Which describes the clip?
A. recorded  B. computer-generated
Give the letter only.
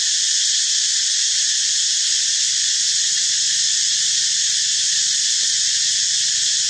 A